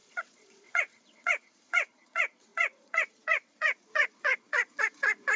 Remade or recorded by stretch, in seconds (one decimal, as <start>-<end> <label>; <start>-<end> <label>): 0.0-5.4 remade